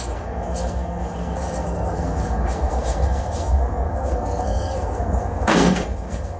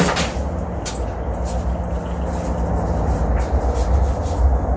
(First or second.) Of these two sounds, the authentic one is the second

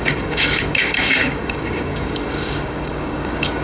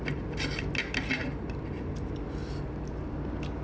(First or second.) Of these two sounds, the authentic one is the second